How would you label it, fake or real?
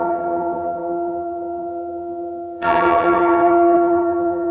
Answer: fake